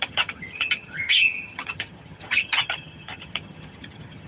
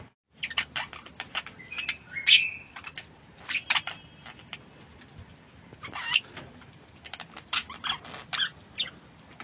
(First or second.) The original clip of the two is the second